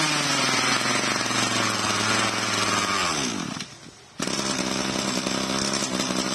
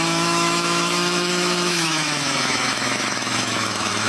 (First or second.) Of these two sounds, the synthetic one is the second